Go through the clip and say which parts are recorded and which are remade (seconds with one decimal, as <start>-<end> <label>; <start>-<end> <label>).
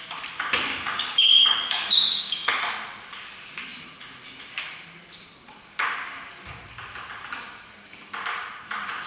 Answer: 0.0-0.7 recorded; 0.7-2.6 remade; 2.6-9.1 recorded